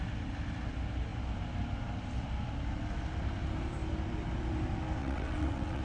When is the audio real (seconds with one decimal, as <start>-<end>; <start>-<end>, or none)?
0.0-5.0